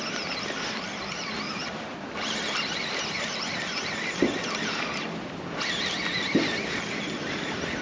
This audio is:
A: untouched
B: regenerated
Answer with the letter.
A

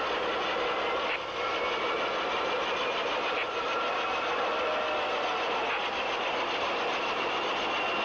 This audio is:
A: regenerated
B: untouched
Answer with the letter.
B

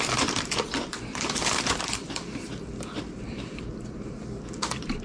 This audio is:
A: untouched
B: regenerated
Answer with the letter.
B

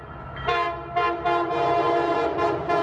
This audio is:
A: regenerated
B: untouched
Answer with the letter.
B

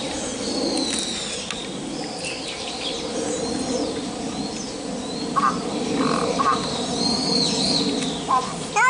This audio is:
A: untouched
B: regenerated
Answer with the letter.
A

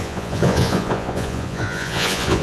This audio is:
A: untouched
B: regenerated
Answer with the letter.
B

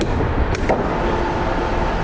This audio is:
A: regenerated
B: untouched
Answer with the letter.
B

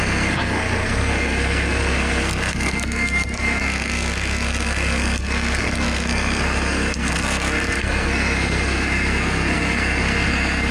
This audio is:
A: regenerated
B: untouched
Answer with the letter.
A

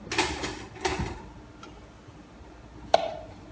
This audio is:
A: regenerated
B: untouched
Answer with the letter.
B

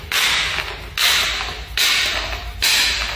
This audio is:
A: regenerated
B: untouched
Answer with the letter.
B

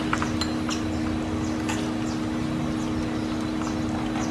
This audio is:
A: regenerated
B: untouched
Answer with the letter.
B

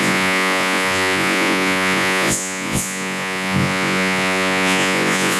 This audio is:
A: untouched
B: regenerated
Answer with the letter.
B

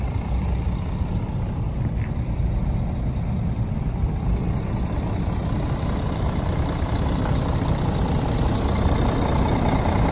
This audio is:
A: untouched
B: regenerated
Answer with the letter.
B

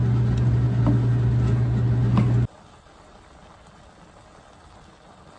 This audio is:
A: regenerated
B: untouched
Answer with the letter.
B